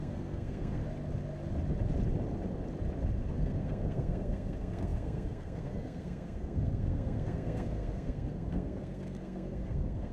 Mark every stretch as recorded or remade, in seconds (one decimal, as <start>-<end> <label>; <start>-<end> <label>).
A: 0.0-0.8 remade; 0.8-3.3 recorded; 3.3-10.1 remade